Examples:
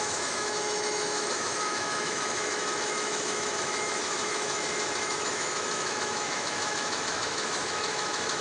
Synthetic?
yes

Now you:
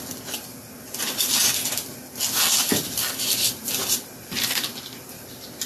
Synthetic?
no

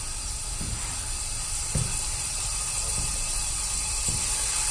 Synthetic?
no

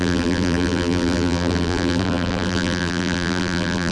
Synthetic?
yes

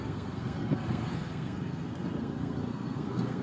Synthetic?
yes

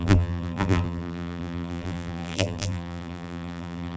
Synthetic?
yes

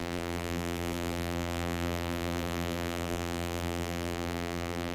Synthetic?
yes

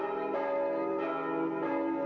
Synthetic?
no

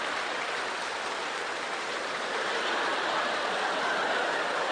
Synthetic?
yes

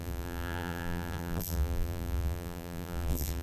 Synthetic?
yes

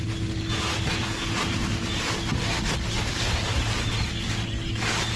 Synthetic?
no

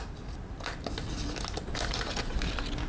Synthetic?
no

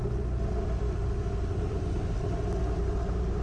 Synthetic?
no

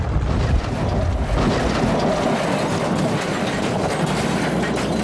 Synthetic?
no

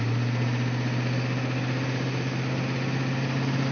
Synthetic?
no